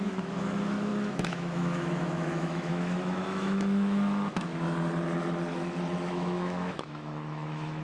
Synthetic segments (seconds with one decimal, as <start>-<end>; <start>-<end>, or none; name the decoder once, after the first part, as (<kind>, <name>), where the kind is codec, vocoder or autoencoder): 0.0-4.5 (autoencoder, DAC-VAE); 6.1-7.8